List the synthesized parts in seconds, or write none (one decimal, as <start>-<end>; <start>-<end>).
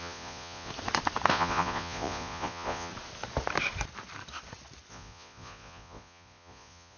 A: 0.0-0.7; 1.3-2.9; 4.9-7.0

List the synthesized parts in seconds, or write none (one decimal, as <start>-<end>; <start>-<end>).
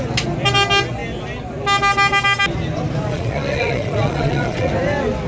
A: 3.1-4.7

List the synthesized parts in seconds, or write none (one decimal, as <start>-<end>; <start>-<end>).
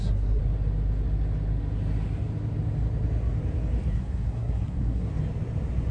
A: 0.0-0.4; 3.9-5.1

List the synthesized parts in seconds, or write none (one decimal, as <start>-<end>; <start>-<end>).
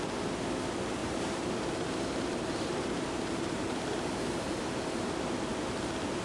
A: 1.0-4.4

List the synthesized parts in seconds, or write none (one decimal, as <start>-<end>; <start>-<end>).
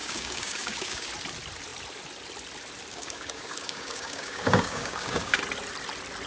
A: 0.0-1.1; 2.9-5.4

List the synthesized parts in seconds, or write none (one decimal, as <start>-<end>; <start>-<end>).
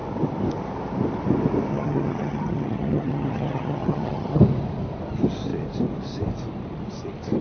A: 1.7-4.4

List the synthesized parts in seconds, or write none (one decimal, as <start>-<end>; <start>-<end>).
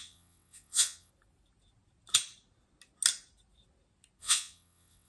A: 0.0-1.1; 4.2-5.1